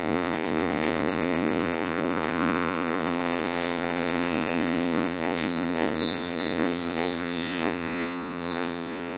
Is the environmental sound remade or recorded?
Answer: remade